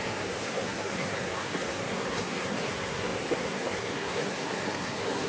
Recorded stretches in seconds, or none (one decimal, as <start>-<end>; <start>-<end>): none